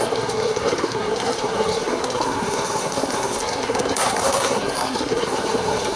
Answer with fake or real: fake